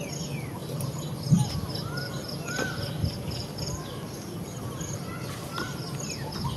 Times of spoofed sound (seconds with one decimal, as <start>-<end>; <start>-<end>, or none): none